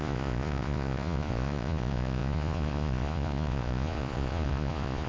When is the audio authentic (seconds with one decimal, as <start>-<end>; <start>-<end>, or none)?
none